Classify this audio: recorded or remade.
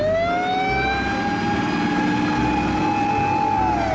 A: recorded